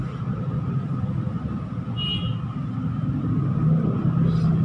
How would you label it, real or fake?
real